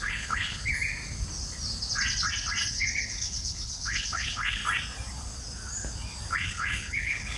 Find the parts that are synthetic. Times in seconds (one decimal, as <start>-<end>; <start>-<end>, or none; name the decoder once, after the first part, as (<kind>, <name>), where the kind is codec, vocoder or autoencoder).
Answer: 0.0-0.7 (codec, HILCodec); 2.7-4.6; 6.3-7.4